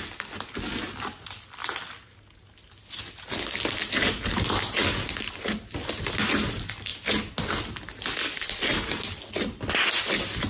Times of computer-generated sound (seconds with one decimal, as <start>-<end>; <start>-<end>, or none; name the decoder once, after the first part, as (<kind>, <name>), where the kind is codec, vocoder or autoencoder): none